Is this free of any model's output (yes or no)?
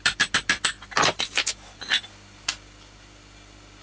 yes